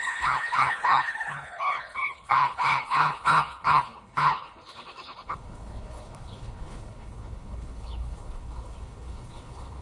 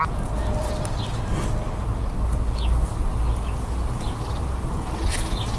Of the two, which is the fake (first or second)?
first